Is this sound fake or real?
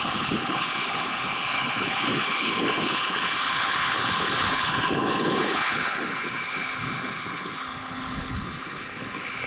fake